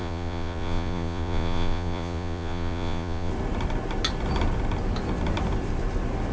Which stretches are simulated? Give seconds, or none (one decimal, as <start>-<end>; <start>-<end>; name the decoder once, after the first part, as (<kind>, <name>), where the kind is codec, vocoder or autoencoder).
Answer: 0.0-3.3 (vocoder, Vocos)